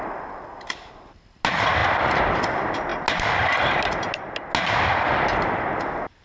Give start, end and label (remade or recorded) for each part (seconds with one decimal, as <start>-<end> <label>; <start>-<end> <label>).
0.0-1.8 recorded; 1.8-2.3 remade; 2.3-6.2 recorded